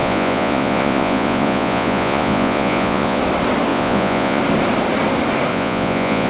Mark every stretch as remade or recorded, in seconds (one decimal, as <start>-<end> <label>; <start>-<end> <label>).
0.0-3.2 remade; 3.2-3.7 recorded; 3.7-4.4 remade; 4.4-5.5 recorded; 5.5-6.3 remade